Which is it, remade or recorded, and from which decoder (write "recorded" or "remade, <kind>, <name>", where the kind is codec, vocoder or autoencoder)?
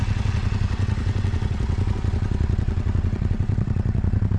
remade, vocoder, WaveNeXt